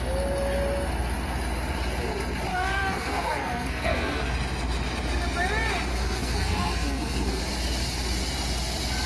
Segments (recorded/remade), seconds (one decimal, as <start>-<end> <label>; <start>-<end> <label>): 0.0-2.5 recorded; 2.5-4.2 remade; 4.2-5.9 recorded; 5.9-7.4 remade; 7.4-9.1 recorded

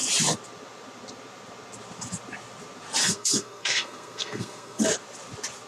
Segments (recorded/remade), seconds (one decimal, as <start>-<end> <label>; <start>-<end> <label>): 0.0-3.0 recorded; 3.0-4.8 remade; 4.8-5.7 recorded

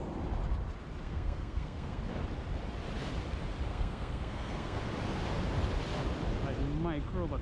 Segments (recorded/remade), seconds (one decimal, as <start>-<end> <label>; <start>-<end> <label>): 0.0-1.0 recorded; 1.0-2.0 remade; 2.0-3.7 recorded; 3.7-4.8 remade; 4.8-7.4 recorded

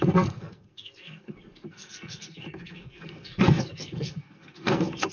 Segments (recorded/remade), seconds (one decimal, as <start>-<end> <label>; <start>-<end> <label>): 0.0-5.1 remade

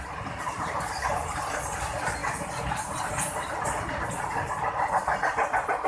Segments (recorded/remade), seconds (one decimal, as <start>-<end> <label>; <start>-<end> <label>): 0.0-5.9 recorded

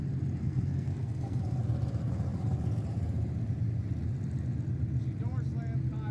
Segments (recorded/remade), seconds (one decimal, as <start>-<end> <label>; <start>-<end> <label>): 0.0-0.4 recorded; 0.4-1.4 remade; 1.4-6.1 recorded

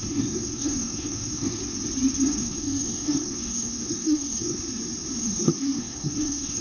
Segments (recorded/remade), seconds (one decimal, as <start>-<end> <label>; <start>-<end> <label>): 0.0-1.6 remade; 1.6-2.4 recorded; 2.4-4.6 remade; 4.6-5.2 recorded; 5.2-6.6 remade